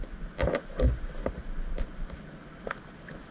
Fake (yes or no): no